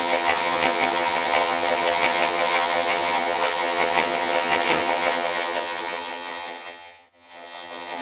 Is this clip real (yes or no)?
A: no